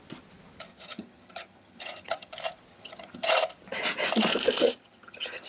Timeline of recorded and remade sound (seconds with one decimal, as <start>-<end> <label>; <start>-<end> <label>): 0.0-0.7 recorded; 0.7-2.3 remade; 2.3-2.7 recorded; 2.7-3.3 remade; 3.3-4.6 recorded; 4.6-5.5 remade